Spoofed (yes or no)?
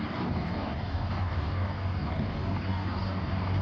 yes